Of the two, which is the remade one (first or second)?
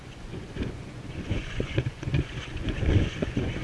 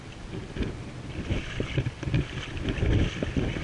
first